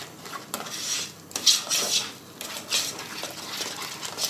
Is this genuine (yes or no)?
yes